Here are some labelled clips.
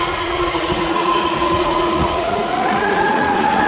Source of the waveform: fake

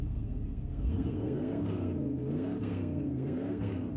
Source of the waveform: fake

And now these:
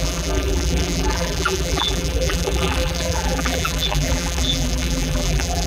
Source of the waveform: fake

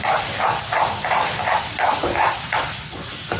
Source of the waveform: real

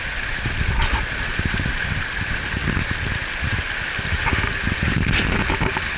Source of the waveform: real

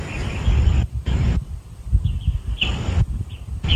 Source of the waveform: fake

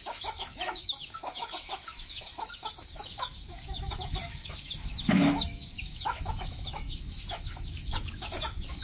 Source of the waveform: fake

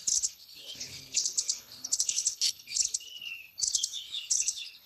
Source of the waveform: fake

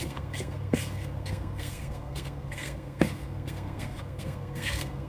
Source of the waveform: fake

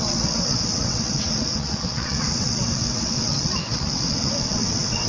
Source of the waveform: fake